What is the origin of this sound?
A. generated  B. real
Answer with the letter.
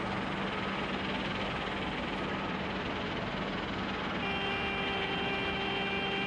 B